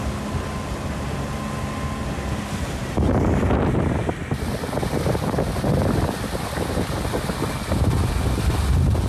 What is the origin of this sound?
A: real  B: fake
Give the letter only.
A